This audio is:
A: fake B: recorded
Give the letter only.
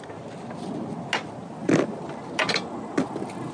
B